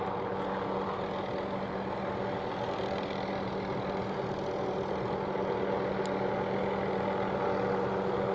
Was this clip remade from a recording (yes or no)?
no